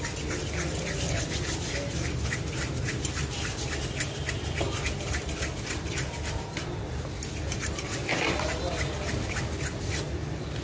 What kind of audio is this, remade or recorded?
recorded